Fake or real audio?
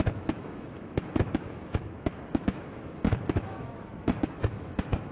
fake